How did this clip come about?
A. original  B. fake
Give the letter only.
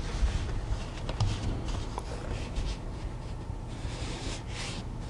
A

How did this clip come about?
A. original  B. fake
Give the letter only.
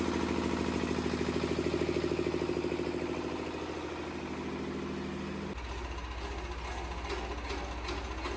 A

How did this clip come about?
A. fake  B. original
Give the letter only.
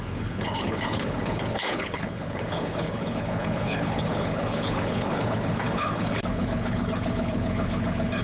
A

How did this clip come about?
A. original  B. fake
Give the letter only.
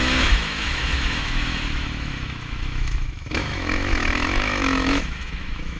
B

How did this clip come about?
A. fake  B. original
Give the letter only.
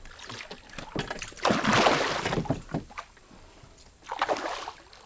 B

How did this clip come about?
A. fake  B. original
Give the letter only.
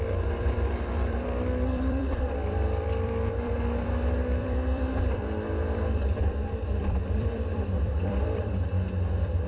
A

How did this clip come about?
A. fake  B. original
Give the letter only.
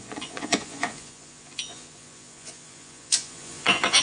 A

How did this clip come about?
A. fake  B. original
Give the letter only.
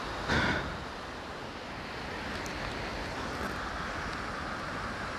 B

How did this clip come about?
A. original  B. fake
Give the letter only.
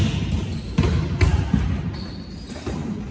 A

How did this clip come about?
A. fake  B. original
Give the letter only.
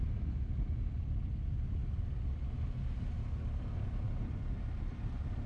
B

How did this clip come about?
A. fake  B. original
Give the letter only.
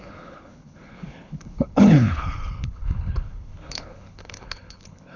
A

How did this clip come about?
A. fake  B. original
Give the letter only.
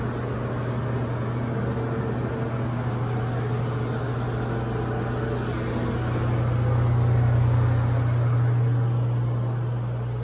B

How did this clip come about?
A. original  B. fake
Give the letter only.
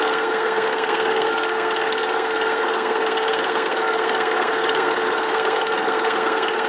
B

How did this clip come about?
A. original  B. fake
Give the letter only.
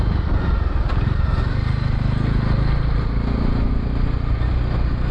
A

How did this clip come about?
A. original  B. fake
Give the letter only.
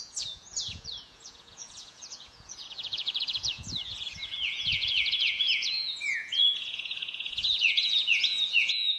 B